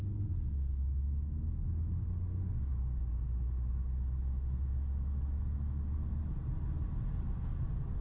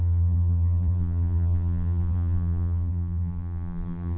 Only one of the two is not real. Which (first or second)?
second